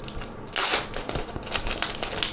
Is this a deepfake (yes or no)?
no